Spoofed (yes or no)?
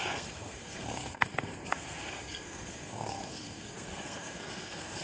yes